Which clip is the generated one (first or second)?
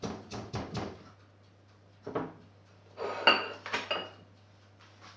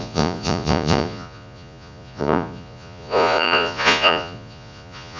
second